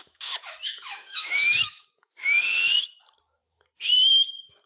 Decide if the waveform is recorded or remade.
remade